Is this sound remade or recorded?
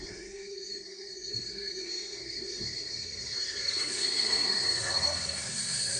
remade